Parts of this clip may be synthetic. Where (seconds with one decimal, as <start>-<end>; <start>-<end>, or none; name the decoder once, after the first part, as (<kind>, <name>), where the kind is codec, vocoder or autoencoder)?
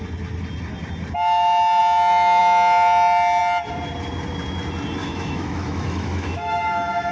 5.0-7.1 (autoencoder, DAC-VAE)